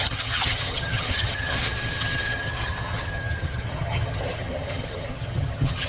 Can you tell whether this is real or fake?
fake